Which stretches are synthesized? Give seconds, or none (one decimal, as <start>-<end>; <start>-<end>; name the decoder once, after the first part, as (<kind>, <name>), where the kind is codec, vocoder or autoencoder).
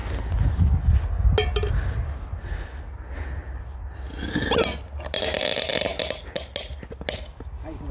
none